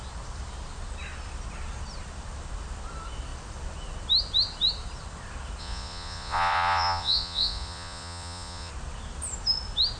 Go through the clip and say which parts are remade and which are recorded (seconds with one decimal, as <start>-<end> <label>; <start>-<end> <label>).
0.0-5.6 recorded; 5.6-8.7 remade; 8.7-10.0 recorded

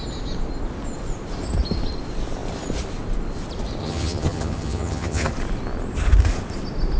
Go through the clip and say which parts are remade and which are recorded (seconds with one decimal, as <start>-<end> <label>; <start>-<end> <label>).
0.0-3.8 recorded; 3.8-5.3 remade; 5.3-7.0 recorded